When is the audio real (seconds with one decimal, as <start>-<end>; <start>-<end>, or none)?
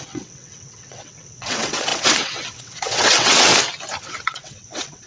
3.5-4.0